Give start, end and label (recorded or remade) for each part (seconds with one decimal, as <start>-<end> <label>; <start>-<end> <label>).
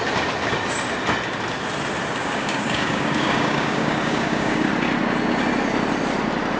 0.0-2.2 recorded; 2.2-4.7 remade; 4.7-6.6 recorded